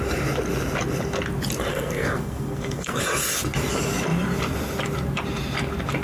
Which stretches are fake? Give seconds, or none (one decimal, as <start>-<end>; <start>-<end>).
1.7-3.0